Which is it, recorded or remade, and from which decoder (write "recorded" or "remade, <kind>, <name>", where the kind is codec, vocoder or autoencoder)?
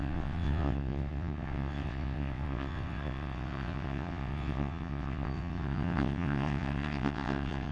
remade, vocoder, WaveNeXt